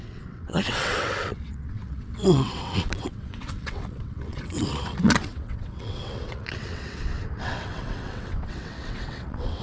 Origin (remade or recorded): remade